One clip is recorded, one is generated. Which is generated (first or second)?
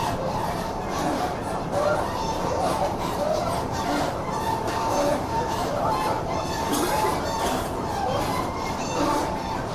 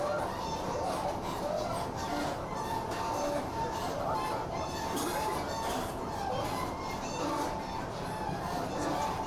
first